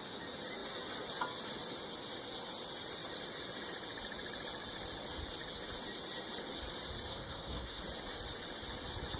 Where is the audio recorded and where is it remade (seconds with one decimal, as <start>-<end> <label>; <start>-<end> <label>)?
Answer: 0.0-7.1 recorded; 7.1-7.8 remade; 7.8-9.2 recorded